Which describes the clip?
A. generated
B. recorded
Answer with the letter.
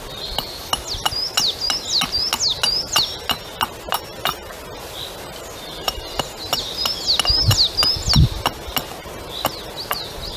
B